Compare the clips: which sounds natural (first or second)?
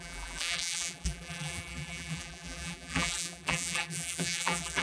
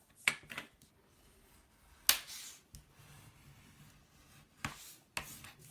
second